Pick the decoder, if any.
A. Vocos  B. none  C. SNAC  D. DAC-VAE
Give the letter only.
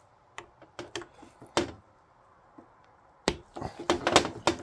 B